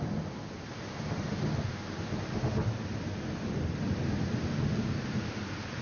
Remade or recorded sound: recorded